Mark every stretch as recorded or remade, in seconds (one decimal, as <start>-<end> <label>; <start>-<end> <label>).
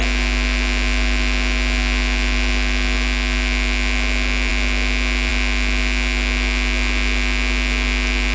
0.0-8.3 recorded